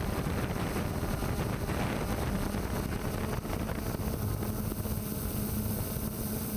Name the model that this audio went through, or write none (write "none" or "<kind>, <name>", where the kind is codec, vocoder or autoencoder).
none